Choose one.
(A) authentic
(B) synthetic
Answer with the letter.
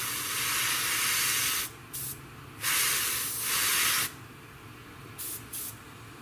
A